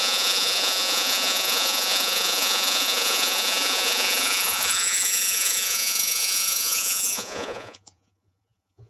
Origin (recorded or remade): remade